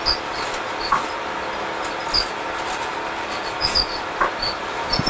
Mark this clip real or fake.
real